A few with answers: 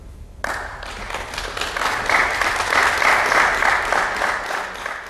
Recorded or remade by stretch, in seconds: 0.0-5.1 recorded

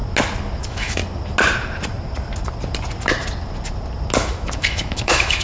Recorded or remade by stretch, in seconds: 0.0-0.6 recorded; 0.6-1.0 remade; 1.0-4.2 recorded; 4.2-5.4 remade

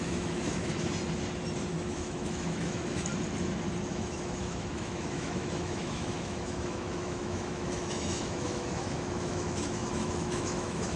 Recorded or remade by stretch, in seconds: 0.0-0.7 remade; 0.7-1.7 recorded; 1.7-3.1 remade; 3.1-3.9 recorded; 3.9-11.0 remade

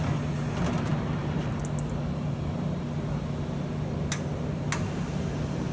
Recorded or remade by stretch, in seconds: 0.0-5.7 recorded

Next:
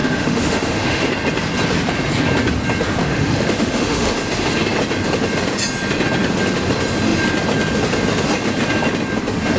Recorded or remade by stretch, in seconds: 0.0-1.1 remade; 1.1-3.0 recorded; 3.0-4.2 remade; 4.2-9.6 recorded

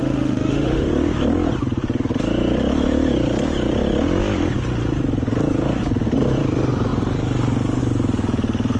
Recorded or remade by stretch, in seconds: 0.0-0.9 remade; 0.9-8.8 recorded

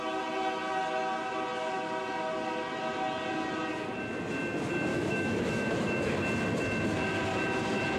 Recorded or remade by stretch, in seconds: 0.0-4.9 recorded; 4.9-6.1 remade; 6.1-8.0 recorded

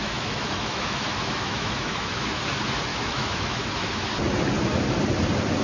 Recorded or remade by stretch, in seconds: 0.0-2.4 remade; 2.4-2.9 recorded; 2.9-4.0 remade; 4.0-5.6 recorded